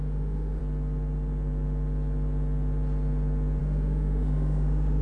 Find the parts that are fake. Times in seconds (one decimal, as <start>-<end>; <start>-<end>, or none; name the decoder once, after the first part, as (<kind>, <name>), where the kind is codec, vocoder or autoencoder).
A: 0.0-0.6 (autoencoder, DAC-VAE); 3.6-5.0